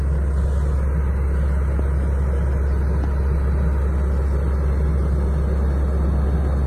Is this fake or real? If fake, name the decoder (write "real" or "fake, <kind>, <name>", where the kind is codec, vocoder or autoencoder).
real